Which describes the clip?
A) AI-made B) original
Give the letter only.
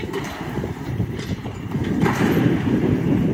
A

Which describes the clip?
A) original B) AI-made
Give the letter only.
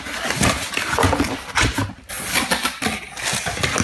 A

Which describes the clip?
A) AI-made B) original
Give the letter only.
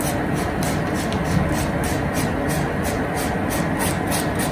B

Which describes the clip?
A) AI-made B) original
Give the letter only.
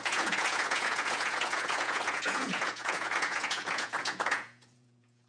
A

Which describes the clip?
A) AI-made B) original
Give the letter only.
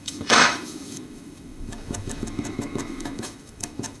A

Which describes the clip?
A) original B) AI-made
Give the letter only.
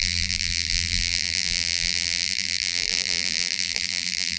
B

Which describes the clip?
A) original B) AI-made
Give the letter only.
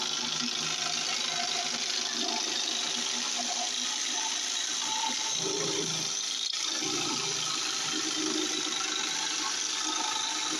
A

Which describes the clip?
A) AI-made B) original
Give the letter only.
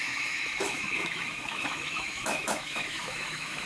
A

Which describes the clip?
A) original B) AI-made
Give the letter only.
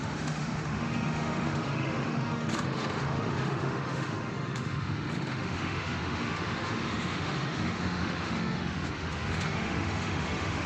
B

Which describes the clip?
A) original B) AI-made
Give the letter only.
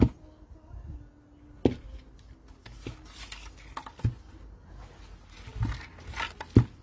A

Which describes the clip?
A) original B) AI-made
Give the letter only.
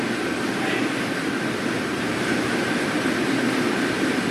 B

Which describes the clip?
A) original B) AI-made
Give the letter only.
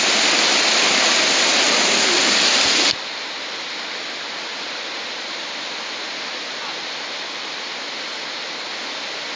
A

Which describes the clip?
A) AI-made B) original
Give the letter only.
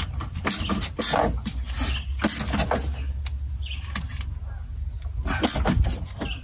B